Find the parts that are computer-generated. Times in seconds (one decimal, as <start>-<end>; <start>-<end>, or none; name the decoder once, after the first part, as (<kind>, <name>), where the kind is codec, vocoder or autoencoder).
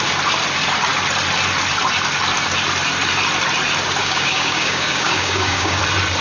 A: 4.0-5.8 (codec, DAC)